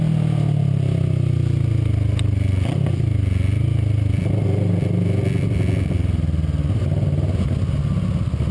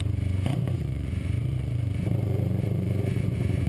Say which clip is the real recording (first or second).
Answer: first